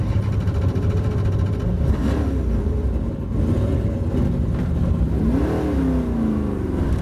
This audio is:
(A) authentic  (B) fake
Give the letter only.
A